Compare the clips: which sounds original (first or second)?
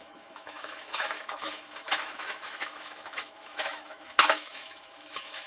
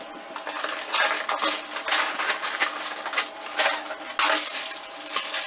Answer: second